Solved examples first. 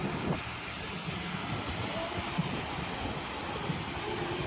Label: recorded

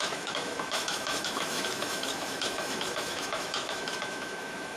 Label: remade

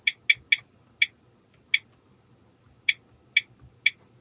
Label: recorded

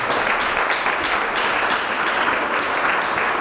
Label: recorded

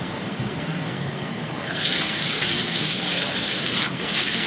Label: remade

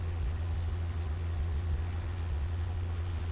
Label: remade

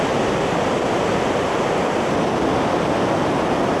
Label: recorded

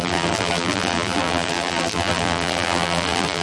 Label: remade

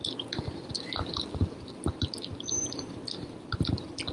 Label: recorded